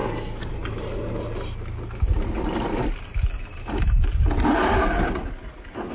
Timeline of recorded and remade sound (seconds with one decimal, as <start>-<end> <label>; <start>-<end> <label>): 0.0-5.9 recorded